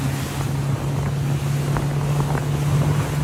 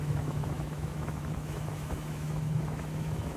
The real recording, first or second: first